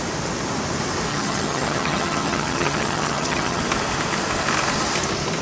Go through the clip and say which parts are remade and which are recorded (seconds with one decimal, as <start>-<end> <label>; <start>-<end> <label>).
0.0-1.1 recorded; 1.1-3.6 remade; 3.6-5.4 recorded

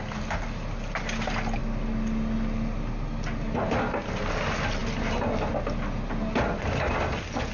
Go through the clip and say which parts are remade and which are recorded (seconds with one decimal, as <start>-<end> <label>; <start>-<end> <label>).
0.0-7.5 recorded

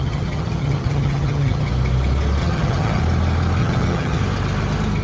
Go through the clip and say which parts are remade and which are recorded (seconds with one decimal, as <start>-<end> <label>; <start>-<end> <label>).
0.0-1.7 remade; 1.7-2.4 recorded; 2.4-3.0 remade; 3.0-3.6 recorded; 3.6-4.2 remade; 4.2-5.0 recorded

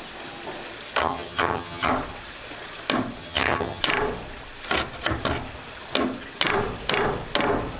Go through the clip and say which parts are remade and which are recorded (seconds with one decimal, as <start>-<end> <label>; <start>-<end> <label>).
0.0-1.0 recorded; 1.0-1.9 remade; 1.9-3.2 recorded; 3.2-3.8 remade; 3.8-7.8 recorded